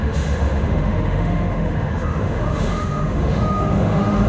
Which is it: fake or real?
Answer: fake